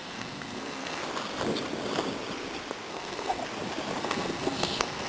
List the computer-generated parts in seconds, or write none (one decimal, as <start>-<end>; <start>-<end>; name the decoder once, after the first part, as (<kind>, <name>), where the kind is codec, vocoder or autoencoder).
0.0-1.0 (codec, SNAC); 2.9-3.4; 4.0-5.1